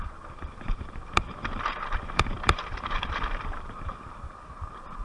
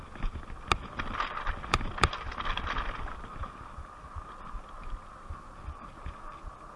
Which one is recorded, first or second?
second